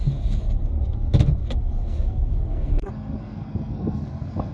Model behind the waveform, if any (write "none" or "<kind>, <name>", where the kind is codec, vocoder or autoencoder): codec, SNAC